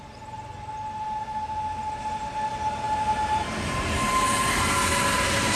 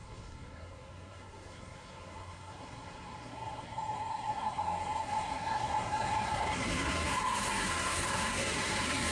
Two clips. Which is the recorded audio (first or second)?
first